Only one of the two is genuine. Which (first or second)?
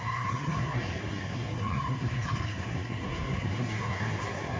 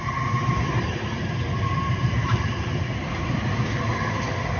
second